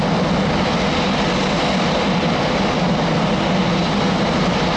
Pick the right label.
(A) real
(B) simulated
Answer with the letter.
A